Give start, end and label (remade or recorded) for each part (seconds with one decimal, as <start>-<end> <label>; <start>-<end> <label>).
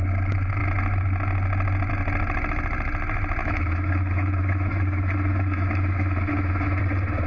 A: 0.0-3.4 recorded; 3.4-6.8 remade; 6.8-7.3 recorded